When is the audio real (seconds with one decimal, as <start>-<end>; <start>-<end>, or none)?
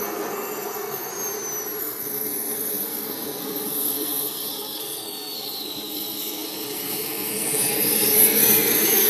1.1-1.8